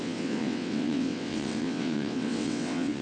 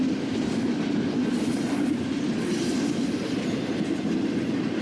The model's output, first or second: first